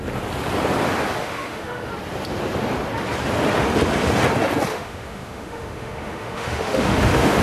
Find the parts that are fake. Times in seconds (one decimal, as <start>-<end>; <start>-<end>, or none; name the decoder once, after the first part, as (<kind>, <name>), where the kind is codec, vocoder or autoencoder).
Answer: 1.2-1.9 (autoencoder, DAC-VAE); 4.7-7.4